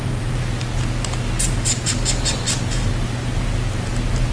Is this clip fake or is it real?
real